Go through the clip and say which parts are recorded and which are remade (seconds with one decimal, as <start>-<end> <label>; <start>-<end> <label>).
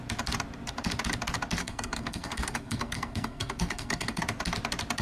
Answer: 0.0-1.6 recorded; 1.6-4.2 remade; 4.2-5.0 recorded